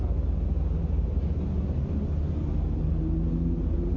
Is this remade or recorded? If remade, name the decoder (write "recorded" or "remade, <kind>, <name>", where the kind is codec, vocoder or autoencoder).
recorded